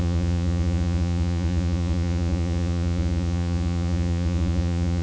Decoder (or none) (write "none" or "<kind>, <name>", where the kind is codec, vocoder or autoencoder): vocoder, Vocos